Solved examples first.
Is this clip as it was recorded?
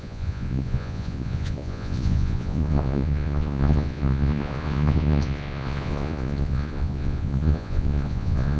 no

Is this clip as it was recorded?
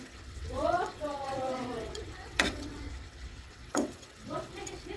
no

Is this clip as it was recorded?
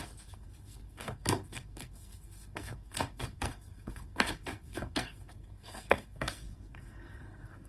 no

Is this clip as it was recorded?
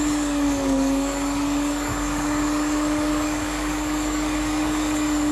no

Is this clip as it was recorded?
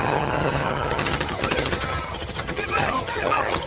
no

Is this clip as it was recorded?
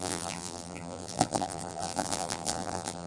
no